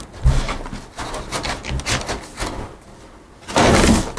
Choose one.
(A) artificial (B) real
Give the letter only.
B